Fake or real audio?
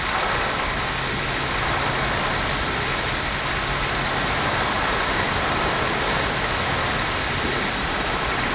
real